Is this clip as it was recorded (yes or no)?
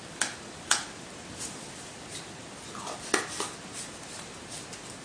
yes